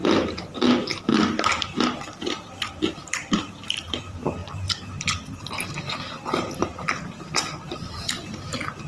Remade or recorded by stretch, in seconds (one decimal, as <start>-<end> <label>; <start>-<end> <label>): 0.0-8.9 recorded